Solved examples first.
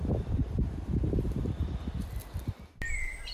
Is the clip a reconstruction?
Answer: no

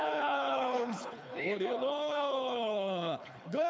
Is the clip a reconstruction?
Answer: yes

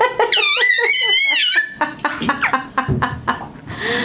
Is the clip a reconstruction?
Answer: no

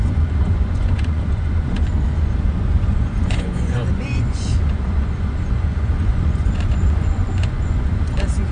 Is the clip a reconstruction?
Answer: yes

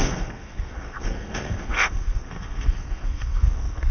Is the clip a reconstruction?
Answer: yes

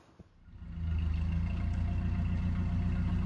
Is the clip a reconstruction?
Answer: no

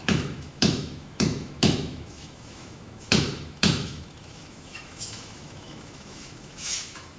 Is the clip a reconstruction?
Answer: yes